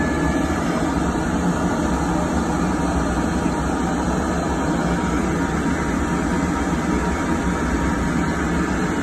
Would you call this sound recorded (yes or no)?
yes